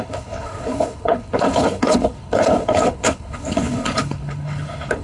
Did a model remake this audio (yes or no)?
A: yes